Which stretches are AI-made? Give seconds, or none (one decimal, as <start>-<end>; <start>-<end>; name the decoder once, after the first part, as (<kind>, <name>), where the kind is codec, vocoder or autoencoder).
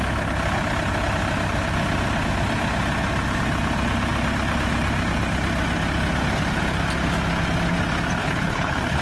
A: 8.2-9.0 (codec, HILCodec)